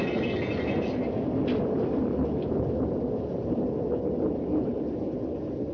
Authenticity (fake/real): real